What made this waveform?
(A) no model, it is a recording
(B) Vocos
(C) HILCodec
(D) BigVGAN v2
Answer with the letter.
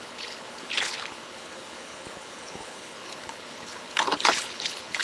C